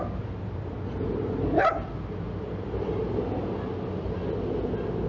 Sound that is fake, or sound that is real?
real